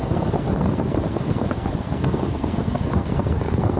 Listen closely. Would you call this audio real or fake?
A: fake